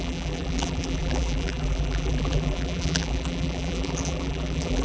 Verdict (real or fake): fake